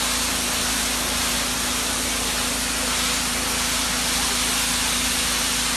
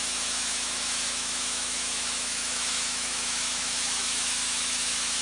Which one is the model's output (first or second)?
second